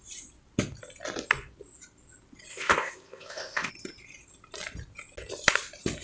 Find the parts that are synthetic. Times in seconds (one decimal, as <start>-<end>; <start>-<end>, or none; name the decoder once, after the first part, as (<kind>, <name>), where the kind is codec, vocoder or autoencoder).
2.5-3.7 (codec, ZipCodec)